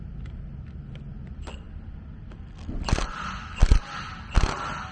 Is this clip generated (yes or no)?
no